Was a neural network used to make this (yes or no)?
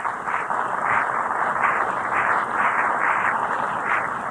no